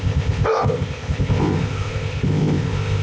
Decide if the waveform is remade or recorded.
remade